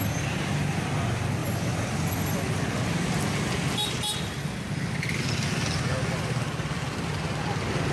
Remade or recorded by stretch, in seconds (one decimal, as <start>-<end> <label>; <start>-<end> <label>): 0.0-7.9 recorded